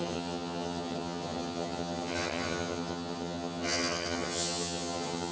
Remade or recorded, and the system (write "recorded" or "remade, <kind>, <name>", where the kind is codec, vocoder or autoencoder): remade, vocoder, HiFi-GAN